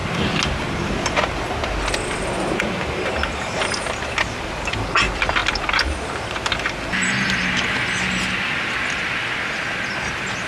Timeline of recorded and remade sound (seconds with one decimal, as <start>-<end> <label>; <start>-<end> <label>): 0.0-10.5 recorded